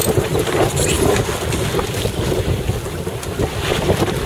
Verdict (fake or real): real